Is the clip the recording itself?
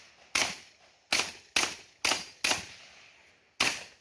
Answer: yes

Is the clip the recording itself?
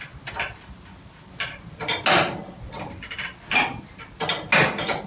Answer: yes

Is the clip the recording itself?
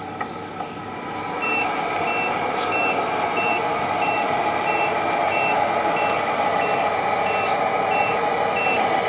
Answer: yes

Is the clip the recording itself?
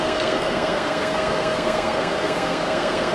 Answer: no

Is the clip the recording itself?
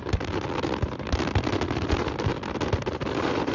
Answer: yes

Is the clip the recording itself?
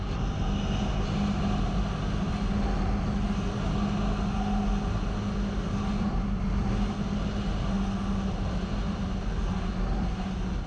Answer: yes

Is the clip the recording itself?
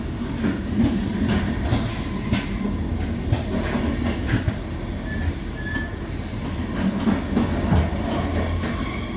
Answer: yes